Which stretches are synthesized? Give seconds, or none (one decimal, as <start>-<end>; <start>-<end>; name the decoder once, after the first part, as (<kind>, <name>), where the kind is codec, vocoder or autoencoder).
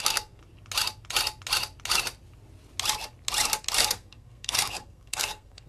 0.0-0.4 (codec, SNAC); 3.8-5.7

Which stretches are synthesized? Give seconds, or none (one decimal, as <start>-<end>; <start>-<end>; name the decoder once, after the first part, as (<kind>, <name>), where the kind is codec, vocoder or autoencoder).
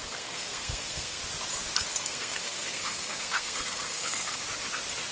0.0-1.2 (codec, SNAC); 1.9-4.4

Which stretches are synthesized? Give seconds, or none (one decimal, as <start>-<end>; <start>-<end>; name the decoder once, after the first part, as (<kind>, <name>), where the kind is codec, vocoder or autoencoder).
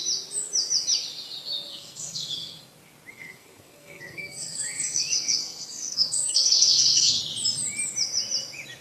1.7-2.6 (codec, SNAC); 3.1-7.2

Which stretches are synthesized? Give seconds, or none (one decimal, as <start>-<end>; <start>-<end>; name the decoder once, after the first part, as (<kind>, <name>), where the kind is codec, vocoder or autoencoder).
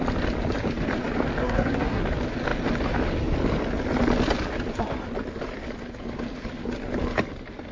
1.4-2.0 (codec, SNAC)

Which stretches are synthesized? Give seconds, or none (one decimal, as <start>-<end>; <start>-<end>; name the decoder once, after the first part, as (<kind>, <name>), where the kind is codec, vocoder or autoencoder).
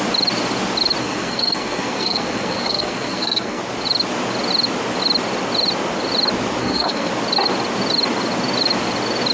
1.0-3.6 (codec, SNAC); 6.6-7.1